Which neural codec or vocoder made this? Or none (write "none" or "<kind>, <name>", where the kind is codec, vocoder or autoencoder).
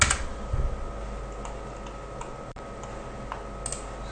none